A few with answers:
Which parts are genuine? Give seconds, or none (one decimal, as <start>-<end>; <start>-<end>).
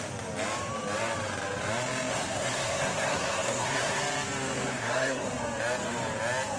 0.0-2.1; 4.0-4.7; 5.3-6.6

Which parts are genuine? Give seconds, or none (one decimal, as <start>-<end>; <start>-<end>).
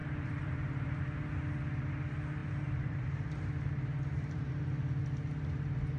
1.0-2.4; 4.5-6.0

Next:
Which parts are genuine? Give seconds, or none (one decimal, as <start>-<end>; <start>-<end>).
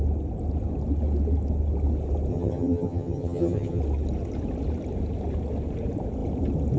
0.0-2.3; 3.8-6.8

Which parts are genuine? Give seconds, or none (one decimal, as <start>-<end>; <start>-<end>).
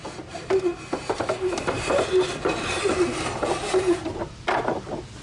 0.7-3.8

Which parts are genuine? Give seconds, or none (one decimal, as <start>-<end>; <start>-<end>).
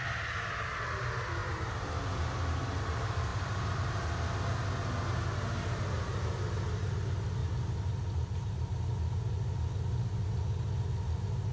0.0-3.3; 4.0-11.5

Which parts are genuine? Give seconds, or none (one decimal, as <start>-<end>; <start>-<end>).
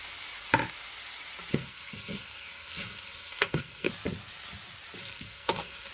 0.0-1.5; 3.9-5.0